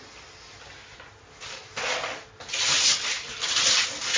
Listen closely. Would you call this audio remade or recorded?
recorded